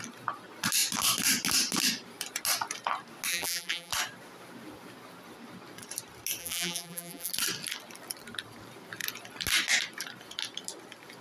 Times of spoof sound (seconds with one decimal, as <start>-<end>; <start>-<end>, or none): 3.3-3.9; 6.4-7.3